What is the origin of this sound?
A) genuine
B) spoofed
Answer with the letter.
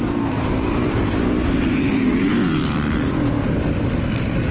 B